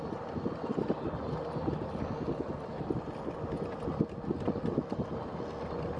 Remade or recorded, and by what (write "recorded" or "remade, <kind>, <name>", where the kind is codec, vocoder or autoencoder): recorded